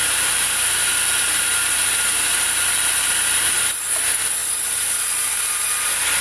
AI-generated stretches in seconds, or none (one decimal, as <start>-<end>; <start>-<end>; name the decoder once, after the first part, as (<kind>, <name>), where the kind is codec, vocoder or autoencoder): 0.0-3.6 (vocoder, BigVGAN v2); 4.4-5.4